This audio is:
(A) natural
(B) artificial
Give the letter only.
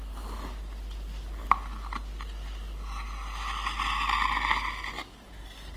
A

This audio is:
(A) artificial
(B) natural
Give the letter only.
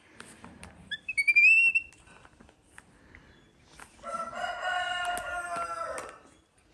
B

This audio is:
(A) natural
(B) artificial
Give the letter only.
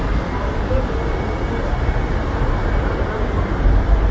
A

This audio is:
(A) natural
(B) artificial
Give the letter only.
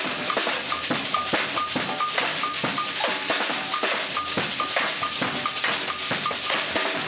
A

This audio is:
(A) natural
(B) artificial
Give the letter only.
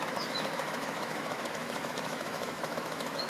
B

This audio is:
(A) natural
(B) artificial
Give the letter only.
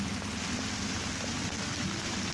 A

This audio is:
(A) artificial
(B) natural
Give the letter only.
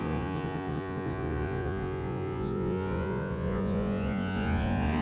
A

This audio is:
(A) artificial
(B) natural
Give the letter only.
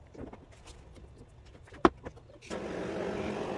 B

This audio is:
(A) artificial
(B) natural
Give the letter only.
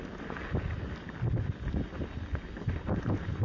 B